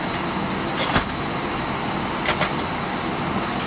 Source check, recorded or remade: recorded